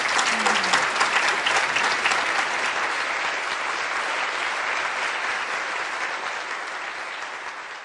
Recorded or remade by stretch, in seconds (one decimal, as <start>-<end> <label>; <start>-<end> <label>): 0.0-1.3 recorded; 1.3-2.2 remade; 2.2-7.8 recorded